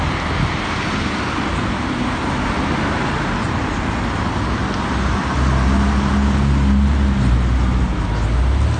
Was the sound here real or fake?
real